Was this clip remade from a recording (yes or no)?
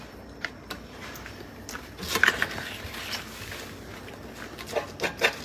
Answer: no